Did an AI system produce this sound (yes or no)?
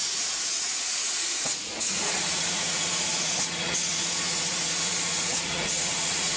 yes